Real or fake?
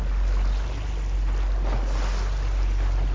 real